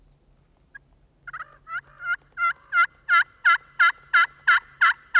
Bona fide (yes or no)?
yes